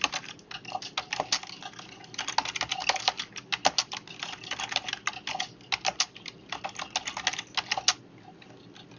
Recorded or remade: recorded